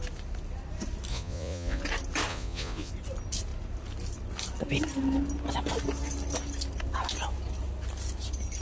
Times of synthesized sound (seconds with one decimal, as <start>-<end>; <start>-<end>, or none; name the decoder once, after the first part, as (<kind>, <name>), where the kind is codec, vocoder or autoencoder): 1.1-1.8 (vocoder, Vocos); 2.3-2.9